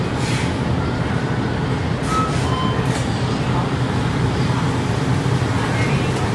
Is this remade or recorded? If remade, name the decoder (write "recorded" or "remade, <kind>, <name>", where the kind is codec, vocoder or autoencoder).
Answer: remade, vocoder, BigVGAN v2